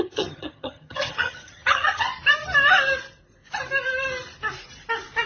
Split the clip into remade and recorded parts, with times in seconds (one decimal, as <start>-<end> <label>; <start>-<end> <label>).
0.0-2.1 remade; 2.1-5.3 recorded